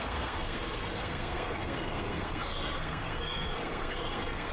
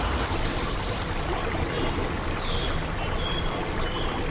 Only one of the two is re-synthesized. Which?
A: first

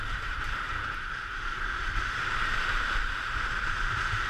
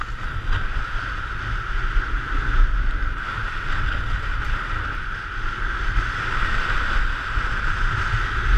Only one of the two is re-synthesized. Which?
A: first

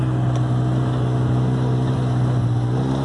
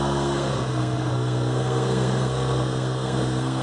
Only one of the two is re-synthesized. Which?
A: second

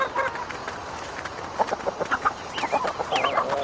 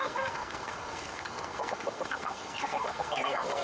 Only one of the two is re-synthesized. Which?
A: second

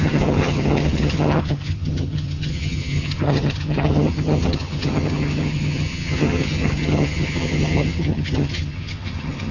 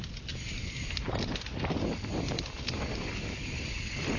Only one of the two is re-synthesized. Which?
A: first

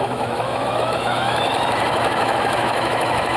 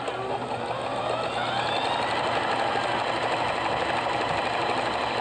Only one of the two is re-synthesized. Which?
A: first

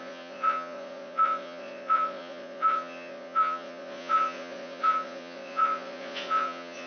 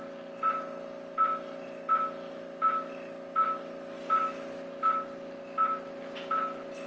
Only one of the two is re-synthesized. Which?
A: first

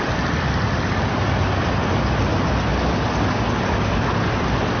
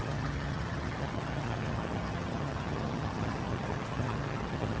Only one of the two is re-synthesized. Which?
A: second